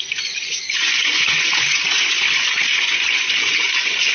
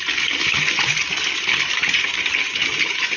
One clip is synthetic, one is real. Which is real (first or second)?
second